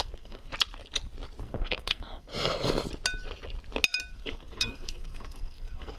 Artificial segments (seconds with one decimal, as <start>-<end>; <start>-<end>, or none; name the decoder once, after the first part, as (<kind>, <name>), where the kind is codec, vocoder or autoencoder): 0.0-0.5 (codec, SNAC); 1.4-2.3; 4.1-6.0